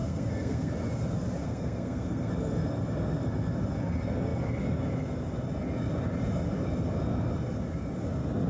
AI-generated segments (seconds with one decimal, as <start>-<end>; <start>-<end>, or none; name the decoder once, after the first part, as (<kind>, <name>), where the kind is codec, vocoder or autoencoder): 0.0-0.7 (codec, SNAC); 1.4-2.3